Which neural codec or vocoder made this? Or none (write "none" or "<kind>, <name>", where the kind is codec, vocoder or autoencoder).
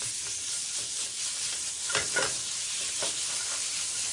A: none